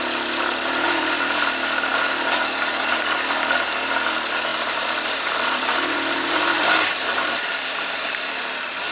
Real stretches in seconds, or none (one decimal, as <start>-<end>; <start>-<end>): 0.0-4.5